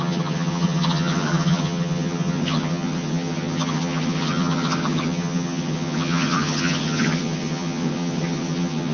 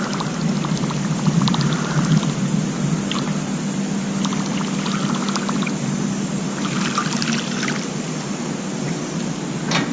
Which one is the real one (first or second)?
second